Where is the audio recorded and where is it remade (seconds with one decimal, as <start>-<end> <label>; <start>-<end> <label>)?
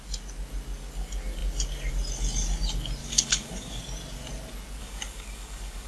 0.0-3.0 recorded; 3.0-3.8 remade; 3.8-4.8 recorded; 4.8-5.9 remade